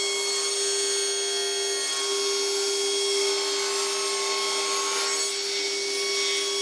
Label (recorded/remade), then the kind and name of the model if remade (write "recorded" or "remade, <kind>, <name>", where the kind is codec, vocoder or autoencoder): recorded